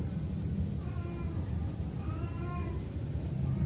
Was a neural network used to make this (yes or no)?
no